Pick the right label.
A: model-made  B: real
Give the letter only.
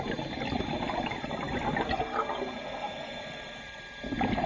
B